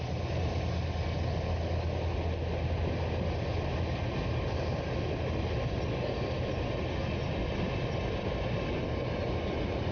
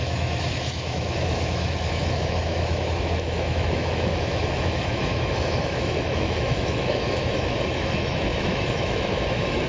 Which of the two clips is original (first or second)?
first